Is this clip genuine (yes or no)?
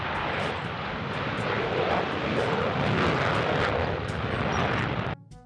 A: yes